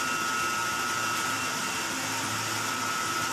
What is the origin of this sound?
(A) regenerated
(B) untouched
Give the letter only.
B